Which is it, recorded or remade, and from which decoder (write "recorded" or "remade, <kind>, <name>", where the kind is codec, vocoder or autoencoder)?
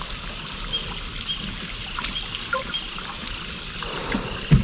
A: recorded